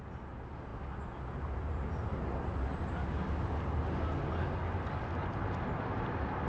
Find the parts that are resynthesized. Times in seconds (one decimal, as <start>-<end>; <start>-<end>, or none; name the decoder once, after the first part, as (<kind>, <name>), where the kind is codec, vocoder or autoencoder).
none